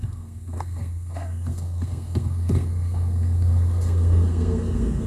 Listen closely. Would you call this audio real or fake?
fake